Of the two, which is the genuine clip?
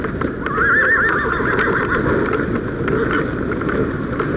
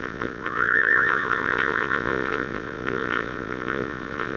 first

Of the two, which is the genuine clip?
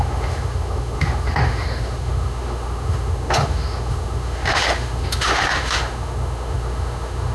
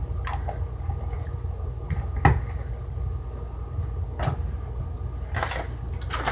second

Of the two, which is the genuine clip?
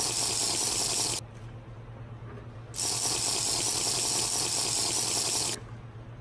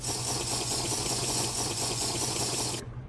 first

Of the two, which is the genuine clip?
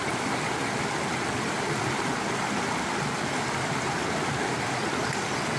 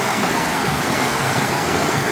first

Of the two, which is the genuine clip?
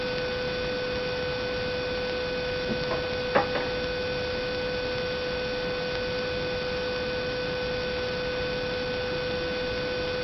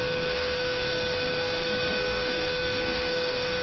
first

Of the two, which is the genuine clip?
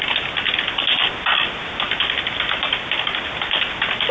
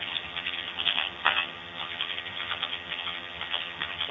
first